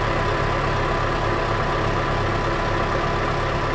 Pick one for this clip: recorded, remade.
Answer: recorded